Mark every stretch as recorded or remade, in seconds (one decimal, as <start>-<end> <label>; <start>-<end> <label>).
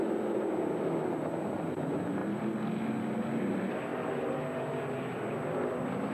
0.0-2.2 recorded; 2.2-2.8 remade; 2.8-3.9 recorded; 3.9-4.4 remade; 4.4-6.1 recorded